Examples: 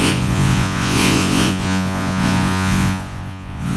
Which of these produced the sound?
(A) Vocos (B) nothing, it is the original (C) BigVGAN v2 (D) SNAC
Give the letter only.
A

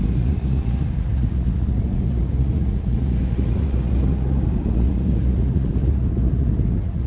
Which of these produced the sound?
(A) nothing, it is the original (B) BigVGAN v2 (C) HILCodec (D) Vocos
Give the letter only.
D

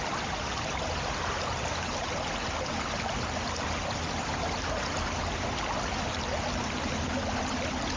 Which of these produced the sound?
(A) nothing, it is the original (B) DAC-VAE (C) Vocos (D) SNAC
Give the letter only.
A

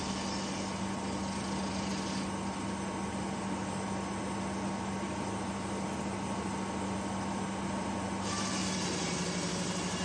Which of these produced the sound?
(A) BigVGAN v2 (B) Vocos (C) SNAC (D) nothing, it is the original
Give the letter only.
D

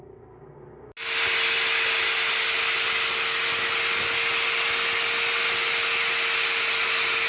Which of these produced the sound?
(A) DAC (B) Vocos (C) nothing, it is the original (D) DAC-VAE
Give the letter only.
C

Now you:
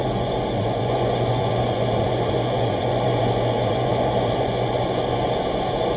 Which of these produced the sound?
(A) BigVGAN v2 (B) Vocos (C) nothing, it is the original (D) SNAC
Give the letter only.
B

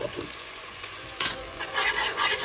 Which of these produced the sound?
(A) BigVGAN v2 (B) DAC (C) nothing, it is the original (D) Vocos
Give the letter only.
D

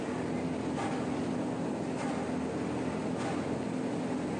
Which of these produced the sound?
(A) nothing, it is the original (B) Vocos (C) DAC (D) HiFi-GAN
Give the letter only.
A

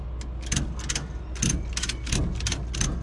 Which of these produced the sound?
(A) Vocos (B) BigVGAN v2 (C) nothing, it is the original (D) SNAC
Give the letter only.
C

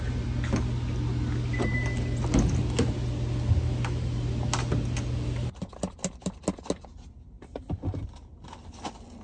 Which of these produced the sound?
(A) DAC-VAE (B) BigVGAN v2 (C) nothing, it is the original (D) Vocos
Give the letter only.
C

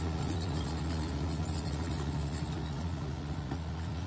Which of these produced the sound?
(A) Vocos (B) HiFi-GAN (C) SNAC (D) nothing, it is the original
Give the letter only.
A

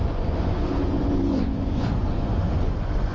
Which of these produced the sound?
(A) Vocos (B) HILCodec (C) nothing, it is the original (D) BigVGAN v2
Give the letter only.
A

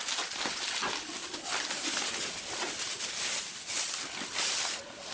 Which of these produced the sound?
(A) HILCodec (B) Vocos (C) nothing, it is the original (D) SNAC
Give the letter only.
C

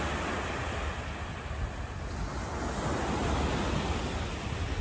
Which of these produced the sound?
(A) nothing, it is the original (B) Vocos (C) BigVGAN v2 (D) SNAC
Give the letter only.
A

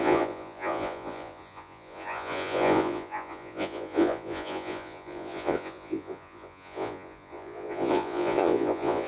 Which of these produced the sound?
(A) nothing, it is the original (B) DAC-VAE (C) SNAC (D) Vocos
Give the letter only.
D